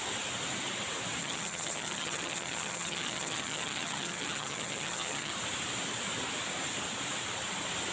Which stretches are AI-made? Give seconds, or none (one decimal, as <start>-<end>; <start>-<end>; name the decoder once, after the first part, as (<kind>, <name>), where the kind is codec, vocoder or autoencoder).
1.2-5.3 (vocoder, HiFi-GAN)